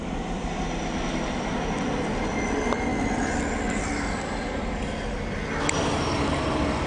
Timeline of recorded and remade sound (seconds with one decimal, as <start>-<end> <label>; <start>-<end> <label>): 0.0-6.9 recorded